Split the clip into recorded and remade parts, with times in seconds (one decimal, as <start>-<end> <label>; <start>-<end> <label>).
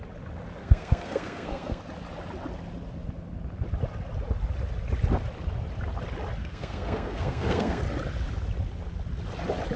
0.0-0.6 recorded; 0.6-1.8 remade; 1.8-6.4 recorded; 6.4-7.8 remade; 7.8-9.8 recorded